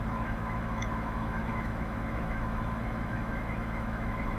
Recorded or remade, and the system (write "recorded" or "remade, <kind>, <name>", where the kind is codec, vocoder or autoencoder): remade, autoencoder, DAC-VAE